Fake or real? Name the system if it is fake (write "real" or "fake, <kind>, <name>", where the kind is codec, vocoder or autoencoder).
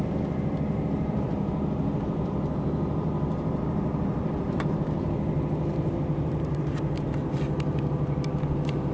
fake, vocoder, BigVGAN v2